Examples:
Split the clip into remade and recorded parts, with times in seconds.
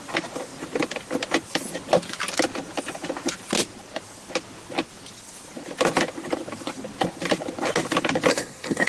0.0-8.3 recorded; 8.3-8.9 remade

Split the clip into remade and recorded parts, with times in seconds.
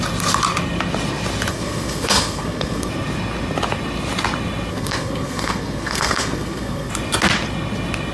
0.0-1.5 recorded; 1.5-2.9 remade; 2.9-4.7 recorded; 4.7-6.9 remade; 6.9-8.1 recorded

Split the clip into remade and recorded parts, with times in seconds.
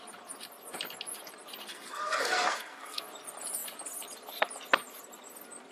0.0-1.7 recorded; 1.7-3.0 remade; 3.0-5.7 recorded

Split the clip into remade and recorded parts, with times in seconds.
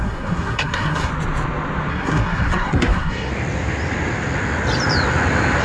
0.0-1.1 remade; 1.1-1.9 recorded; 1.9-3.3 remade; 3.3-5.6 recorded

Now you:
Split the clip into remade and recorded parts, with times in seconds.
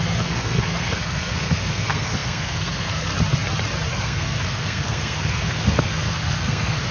0.0-3.1 remade; 3.1-3.9 recorded; 3.9-6.9 remade